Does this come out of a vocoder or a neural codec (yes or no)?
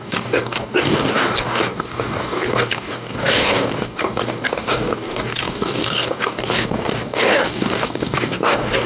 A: yes